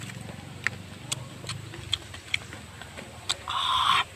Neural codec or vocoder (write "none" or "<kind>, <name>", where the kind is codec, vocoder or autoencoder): none